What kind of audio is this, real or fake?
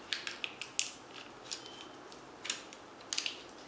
real